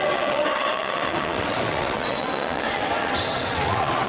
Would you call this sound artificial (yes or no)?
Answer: yes